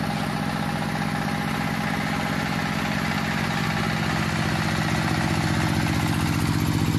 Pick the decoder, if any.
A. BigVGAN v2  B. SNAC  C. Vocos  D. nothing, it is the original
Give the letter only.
D